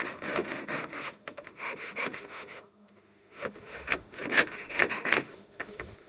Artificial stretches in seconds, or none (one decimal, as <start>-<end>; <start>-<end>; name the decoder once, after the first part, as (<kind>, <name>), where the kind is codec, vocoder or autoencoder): 0.0-6.1 (autoencoder, DAC-VAE)